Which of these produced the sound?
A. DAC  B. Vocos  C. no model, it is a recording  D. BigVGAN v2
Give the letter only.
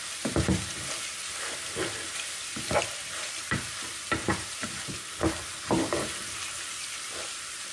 D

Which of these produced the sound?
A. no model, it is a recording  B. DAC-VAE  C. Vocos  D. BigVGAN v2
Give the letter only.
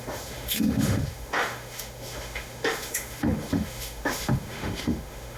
B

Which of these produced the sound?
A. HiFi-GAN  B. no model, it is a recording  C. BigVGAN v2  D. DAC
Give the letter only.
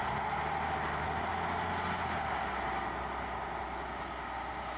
B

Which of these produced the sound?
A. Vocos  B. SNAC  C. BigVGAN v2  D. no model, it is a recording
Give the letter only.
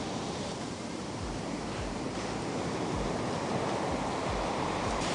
C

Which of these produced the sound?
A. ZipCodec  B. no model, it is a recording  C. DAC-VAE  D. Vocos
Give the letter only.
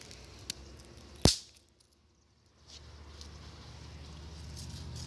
B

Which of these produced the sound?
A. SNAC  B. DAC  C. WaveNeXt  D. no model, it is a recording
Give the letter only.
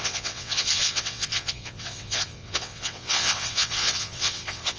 C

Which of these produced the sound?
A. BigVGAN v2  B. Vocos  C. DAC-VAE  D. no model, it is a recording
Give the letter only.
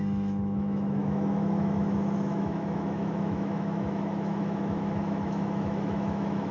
C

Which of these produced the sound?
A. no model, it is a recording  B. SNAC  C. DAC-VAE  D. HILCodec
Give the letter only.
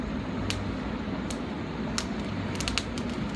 A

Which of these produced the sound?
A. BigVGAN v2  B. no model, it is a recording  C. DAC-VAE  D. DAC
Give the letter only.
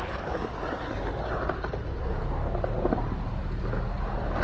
B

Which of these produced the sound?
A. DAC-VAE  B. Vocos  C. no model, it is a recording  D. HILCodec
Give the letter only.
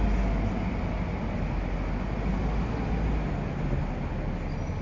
C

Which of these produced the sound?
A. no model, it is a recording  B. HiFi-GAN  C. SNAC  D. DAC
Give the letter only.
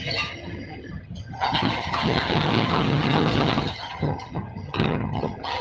B